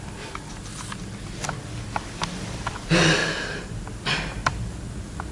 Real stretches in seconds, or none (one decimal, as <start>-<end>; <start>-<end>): 0.0-3.2; 4.0-5.3